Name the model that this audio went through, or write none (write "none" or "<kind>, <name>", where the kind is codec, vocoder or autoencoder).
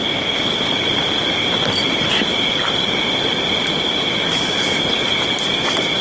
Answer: none